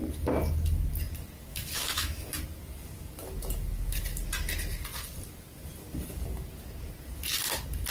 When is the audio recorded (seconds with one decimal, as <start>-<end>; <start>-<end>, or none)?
0.0-1.5; 2.3-7.9